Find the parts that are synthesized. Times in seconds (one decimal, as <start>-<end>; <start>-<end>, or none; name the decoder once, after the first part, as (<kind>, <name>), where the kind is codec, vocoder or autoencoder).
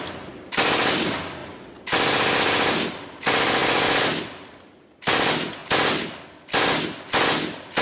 none